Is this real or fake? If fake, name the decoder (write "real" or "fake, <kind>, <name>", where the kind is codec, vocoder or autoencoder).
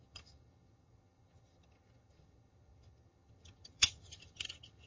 fake, vocoder, HiFi-GAN